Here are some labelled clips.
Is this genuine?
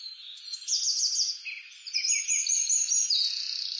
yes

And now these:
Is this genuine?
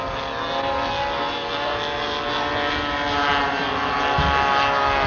yes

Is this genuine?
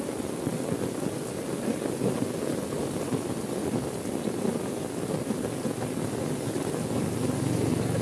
yes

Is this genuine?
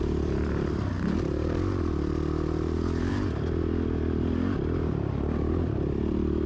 yes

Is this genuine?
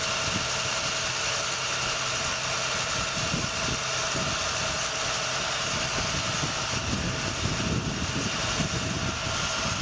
yes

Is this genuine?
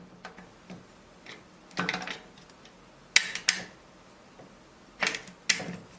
yes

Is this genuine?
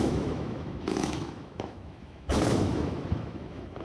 no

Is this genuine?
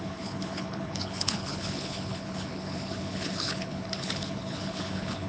no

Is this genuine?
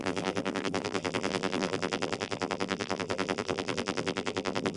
no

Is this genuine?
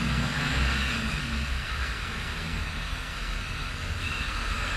no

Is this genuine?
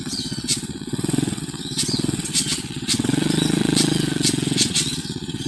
no